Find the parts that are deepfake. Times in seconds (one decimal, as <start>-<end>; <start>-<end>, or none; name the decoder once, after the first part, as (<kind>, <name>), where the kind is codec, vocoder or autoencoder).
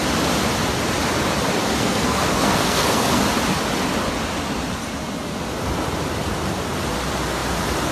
1.6-3.2 (codec, SNAC)